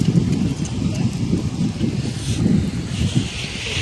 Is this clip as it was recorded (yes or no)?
yes